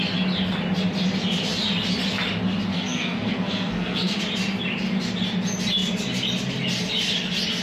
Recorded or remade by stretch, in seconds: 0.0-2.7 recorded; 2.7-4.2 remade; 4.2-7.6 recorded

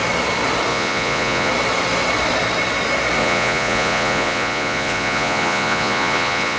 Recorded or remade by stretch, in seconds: 0.0-0.7 recorded; 0.7-1.5 remade; 1.5-3.2 recorded; 3.2-6.6 remade

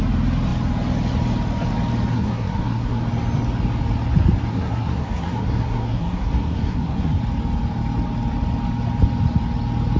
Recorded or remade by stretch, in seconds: 0.0-2.1 recorded; 2.1-3.0 remade; 3.0-4.5 recorded; 4.5-7.2 remade; 7.2-10.0 recorded

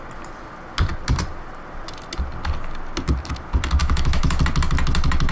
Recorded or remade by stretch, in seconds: 0.0-3.8 recorded; 3.8-4.4 remade; 4.4-5.3 recorded

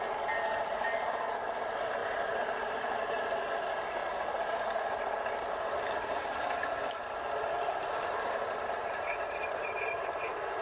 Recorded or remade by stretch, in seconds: 0.0-2.0 recorded; 2.0-3.4 remade; 3.4-10.6 recorded